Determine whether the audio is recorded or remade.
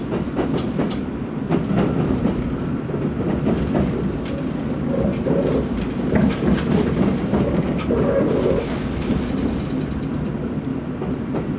recorded